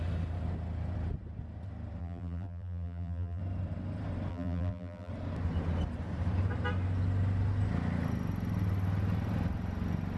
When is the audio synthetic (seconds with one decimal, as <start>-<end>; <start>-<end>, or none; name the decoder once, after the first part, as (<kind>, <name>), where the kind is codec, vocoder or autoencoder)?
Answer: 2.0-3.4 (vocoder, BigVGAN v2); 4.3-5.1